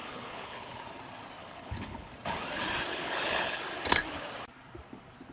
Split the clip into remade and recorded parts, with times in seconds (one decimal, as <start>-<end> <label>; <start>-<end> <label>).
0.0-0.8 remade; 0.8-1.4 recorded; 1.4-2.1 remade; 2.1-2.9 recorded; 2.9-3.6 remade; 3.6-5.3 recorded